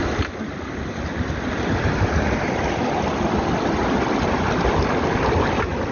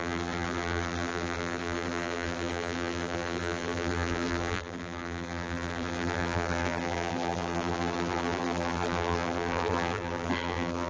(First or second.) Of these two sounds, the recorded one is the first